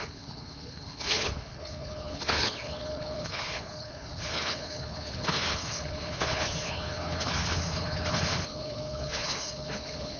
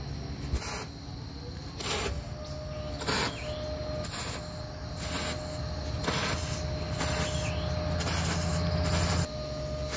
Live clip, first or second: second